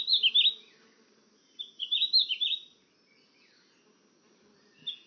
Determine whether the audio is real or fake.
real